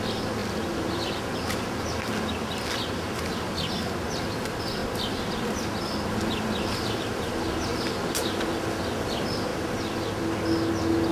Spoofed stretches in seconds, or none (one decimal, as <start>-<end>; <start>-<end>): 4.8-7.3; 7.7-8.4